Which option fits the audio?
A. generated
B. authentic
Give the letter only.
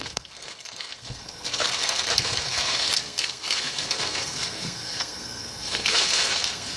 A